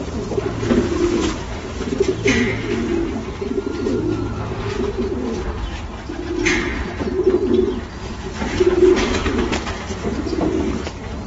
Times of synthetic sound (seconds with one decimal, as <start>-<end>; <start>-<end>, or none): none